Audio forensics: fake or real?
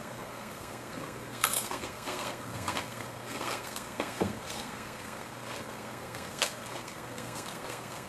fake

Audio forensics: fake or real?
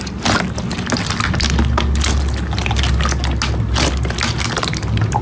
real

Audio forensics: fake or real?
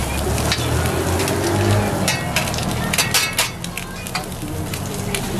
real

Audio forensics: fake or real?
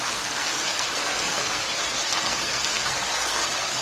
fake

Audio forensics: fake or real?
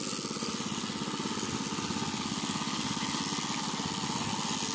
real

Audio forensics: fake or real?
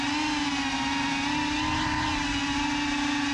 real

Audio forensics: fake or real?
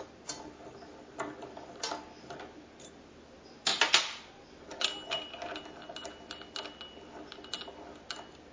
real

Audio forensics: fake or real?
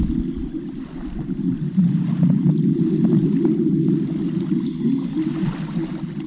real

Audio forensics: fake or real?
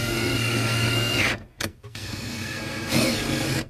fake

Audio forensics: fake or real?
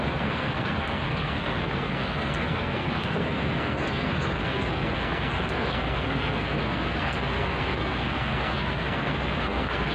fake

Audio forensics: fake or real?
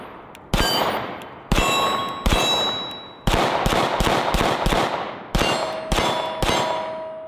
real